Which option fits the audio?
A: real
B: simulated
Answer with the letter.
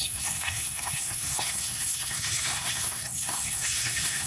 B